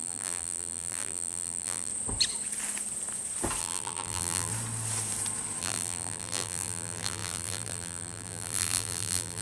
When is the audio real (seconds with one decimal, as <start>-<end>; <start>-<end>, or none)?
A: 1.9-3.6; 4.5-5.6